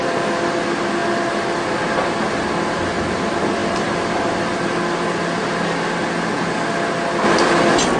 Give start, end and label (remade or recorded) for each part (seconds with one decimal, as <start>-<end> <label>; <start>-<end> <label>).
0.0-8.0 recorded